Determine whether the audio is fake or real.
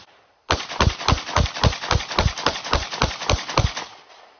real